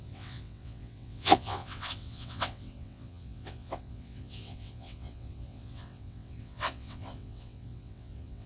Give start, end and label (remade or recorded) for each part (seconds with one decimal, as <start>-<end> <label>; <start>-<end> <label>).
0.0-8.5 remade